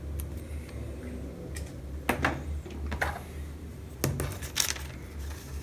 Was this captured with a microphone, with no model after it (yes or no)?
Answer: yes